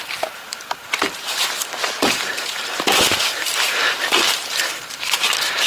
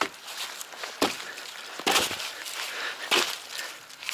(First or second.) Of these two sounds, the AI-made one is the first